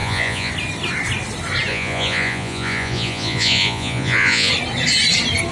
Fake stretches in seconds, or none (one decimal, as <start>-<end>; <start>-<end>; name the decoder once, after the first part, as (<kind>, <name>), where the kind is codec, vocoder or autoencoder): 0.0-0.5 (vocoder, Vocos); 1.7-4.5